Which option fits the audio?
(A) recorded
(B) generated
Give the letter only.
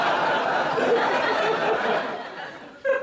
A